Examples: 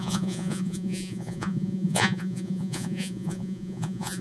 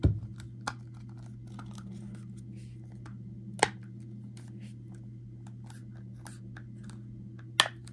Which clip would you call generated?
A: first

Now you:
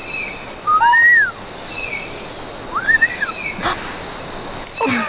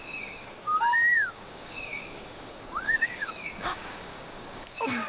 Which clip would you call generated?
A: second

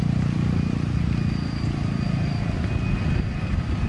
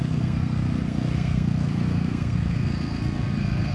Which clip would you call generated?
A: second